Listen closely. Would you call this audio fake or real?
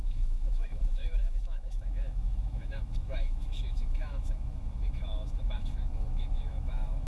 fake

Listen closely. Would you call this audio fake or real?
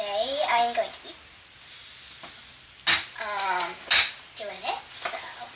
real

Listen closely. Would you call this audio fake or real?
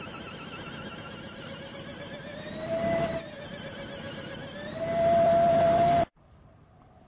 fake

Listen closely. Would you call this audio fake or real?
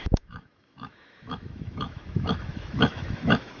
fake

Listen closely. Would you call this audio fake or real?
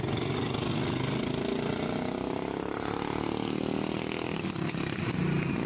real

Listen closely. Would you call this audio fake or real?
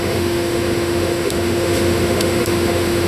fake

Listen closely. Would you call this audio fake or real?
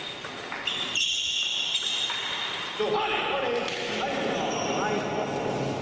real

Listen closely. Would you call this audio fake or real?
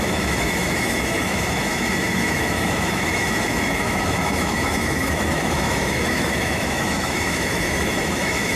fake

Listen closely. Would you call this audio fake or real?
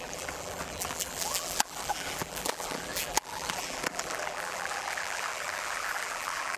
fake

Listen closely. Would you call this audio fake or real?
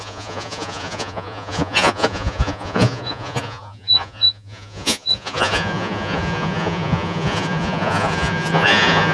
fake